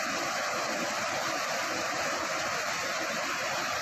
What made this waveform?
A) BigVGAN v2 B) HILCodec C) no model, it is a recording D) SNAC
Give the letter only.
C